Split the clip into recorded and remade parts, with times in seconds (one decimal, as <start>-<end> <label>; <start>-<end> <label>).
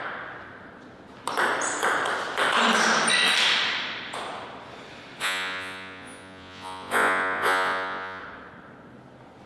0.0-5.2 recorded; 5.2-8.2 remade; 8.2-9.5 recorded